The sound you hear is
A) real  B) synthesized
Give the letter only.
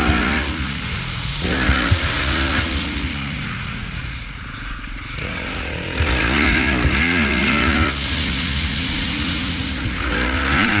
B